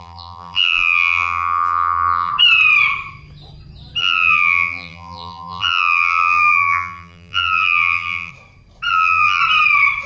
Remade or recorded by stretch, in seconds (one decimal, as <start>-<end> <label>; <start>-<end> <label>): 0.0-2.3 remade; 2.3-4.0 recorded; 4.0-8.3 remade; 8.3-8.9 recorded; 8.9-9.4 remade; 9.4-10.1 recorded